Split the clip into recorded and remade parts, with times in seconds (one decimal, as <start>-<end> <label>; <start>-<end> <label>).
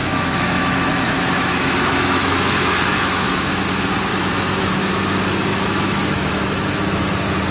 0.0-3.6 remade; 3.6-4.1 recorded; 4.1-4.7 remade; 4.7-5.5 recorded; 5.5-6.7 remade; 6.7-7.5 recorded